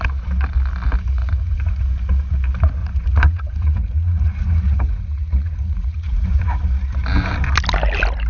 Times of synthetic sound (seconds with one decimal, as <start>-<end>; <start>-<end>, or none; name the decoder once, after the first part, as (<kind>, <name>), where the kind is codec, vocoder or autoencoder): 1.2-1.7 (vocoder, Vocos); 2.8-6.6